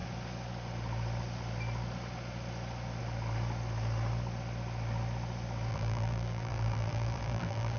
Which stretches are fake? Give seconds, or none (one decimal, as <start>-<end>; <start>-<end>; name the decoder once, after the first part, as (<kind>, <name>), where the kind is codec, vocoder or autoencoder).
5.7-7.8 (vocoder, BigVGAN v2)

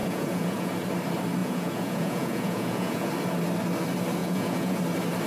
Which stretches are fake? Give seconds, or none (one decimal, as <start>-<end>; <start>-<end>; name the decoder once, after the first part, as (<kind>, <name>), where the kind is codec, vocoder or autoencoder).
0.0-0.7 (vocoder, Vocos); 1.4-3.1; 4.2-4.8

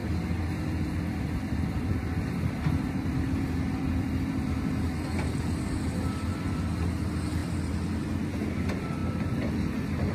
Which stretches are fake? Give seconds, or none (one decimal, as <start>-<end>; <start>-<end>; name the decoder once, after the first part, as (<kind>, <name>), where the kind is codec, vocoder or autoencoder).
0.0-7.4 (vocoder, BigVGAN v2); 8.6-10.1

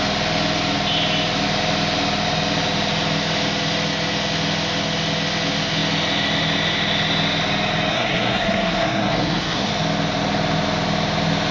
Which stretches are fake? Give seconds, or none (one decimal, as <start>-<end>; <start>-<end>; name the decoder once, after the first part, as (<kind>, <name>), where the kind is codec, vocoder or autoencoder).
7.9-9.7 (codec, SNAC)

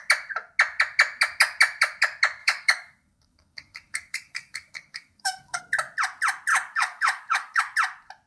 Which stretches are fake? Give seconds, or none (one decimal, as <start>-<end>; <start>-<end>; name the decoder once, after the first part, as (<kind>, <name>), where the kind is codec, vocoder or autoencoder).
2.4-5.6 (codec, DAC); 6.5-7.6